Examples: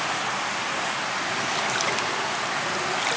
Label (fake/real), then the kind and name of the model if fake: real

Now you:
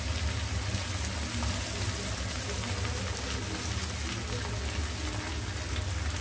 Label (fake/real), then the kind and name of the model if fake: real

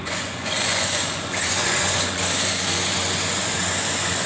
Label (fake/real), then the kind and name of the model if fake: fake, vocoder, Vocos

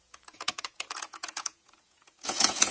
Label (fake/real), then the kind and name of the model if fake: fake, vocoder, Vocos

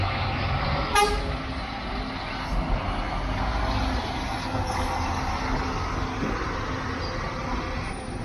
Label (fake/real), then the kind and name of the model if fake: real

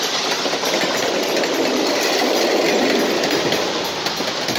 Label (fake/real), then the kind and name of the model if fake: real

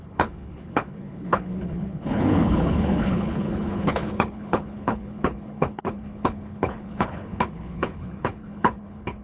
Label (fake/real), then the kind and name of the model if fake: fake, codec, HILCodec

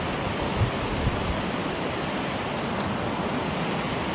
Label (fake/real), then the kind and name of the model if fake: real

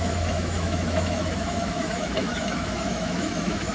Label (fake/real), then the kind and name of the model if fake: fake, autoencoder, DAC-VAE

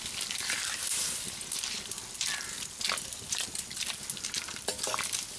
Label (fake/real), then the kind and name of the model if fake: real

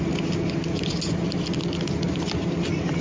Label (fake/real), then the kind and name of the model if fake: real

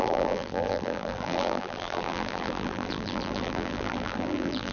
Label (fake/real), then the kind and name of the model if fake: fake, vocoder, BigVGAN v2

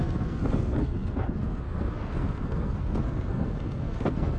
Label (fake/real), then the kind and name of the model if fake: fake, codec, SNAC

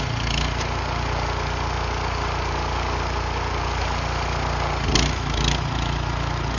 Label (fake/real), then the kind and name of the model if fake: real